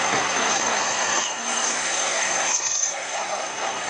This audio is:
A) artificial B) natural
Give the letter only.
A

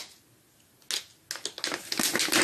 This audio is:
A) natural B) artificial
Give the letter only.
A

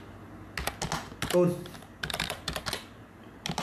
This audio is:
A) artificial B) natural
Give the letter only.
B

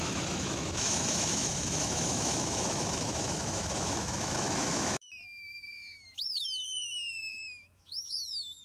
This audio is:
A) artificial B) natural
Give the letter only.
A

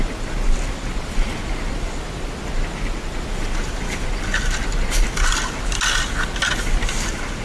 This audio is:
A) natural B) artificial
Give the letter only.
A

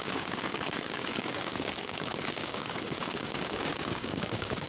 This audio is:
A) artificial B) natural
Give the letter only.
A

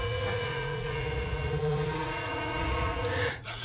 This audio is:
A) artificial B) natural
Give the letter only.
A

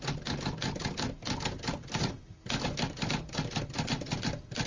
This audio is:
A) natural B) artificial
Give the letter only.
A